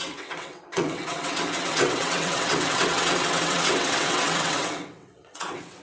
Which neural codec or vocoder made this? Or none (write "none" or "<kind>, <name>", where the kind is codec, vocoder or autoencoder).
vocoder, WaveNeXt